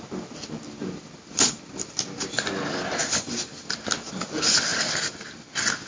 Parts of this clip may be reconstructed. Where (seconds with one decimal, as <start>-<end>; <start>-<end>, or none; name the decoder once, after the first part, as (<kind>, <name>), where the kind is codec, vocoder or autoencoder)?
0.0-5.9 (vocoder, BigVGAN v2)